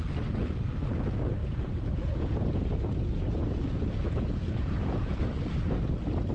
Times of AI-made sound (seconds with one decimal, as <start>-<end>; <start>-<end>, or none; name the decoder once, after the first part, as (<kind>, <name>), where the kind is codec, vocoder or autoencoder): 1.4-5.2 (vocoder, Vocos)